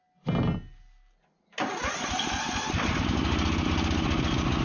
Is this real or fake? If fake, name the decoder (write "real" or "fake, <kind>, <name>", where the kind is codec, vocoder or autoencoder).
real